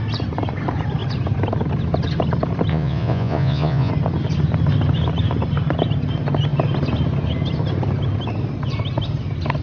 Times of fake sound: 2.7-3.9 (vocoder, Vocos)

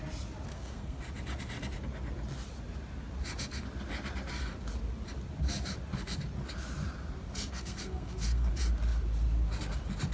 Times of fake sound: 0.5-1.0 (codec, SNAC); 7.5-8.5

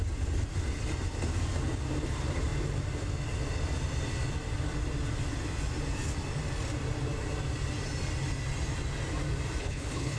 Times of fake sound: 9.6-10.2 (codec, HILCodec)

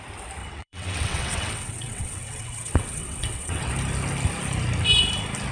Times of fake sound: 0.4-3.7 (vocoder, WaveNeXt)